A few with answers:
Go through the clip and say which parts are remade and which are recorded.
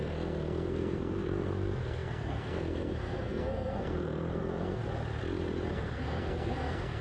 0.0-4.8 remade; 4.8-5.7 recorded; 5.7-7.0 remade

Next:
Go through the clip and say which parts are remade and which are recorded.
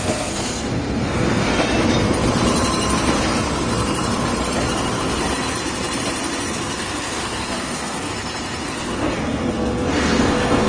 0.0-1.5 remade; 1.5-6.5 recorded; 6.5-8.1 remade; 8.1-8.6 recorded; 8.6-10.7 remade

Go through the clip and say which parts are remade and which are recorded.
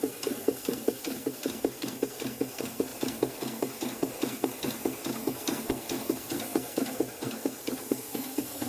0.0-8.7 remade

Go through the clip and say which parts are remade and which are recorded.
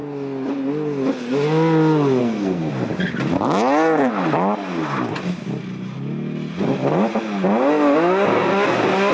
0.0-2.2 recorded; 2.2-2.7 remade; 2.7-9.1 recorded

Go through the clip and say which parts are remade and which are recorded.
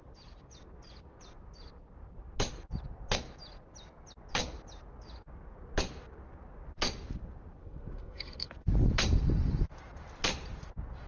0.0-7.6 recorded; 7.6-8.5 remade; 8.5-11.1 recorded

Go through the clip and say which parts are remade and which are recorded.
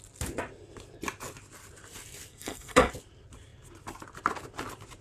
0.0-2.3 recorded; 2.3-2.9 remade; 2.9-5.0 recorded